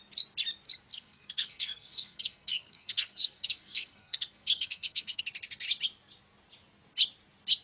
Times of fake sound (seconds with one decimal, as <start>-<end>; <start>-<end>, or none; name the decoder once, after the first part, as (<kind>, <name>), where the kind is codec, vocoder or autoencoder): 0.9-5.2 (codec, SNAC)